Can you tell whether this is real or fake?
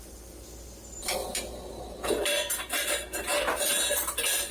real